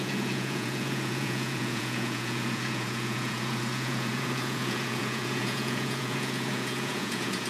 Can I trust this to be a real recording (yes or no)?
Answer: no